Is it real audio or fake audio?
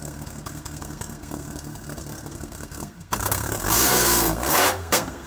fake